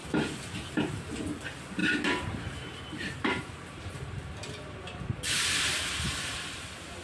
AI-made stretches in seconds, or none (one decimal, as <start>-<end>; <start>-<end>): 1.8-5.6